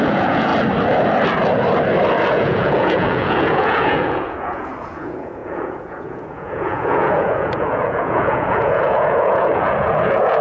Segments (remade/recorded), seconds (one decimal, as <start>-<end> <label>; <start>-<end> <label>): 0.0-0.5 remade; 0.5-2.3 recorded; 2.3-10.4 remade